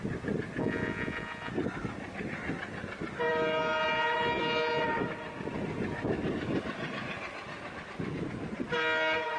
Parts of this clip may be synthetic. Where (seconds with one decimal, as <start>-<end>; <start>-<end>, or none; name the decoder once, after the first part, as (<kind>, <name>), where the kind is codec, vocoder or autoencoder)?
0.6-1.5 (vocoder, Vocos)